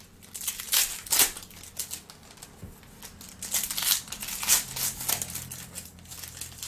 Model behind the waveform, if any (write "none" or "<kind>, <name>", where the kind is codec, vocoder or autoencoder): none